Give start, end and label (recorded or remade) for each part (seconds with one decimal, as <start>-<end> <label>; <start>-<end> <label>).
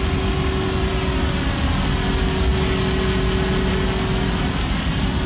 0.0-5.3 recorded